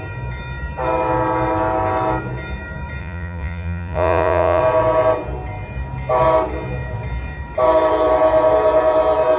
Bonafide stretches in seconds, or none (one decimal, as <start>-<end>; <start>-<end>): 0.0-3.0; 4.6-9.4

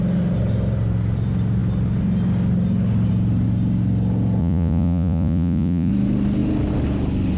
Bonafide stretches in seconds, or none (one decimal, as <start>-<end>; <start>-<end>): 0.0-4.4; 5.9-7.4

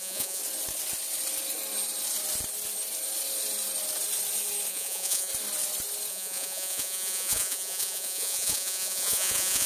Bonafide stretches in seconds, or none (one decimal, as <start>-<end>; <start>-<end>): 0.4-4.7; 5.3-6.1

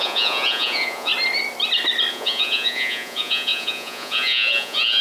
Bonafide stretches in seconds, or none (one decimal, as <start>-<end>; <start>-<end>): 1.1-2.1

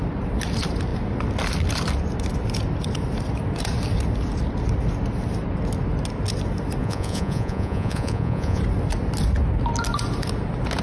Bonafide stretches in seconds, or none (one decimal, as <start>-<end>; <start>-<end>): 0.0-6.8; 8.6-10.8